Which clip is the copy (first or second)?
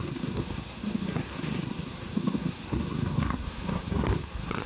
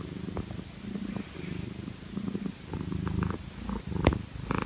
first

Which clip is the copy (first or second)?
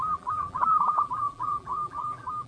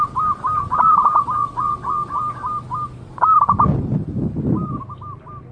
first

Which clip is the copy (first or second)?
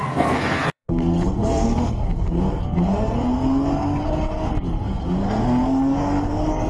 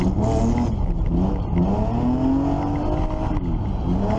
first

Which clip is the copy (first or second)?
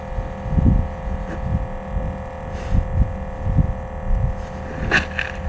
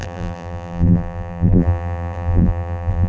second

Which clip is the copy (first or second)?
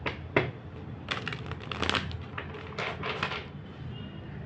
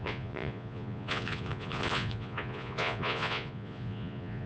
second